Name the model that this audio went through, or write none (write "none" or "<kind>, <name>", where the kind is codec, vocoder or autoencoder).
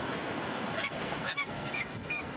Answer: codec, SNAC